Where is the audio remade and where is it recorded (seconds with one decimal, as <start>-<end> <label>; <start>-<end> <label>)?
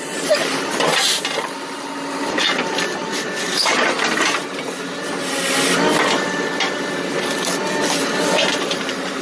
0.0-3.7 remade; 3.7-8.2 recorded; 8.2-9.2 remade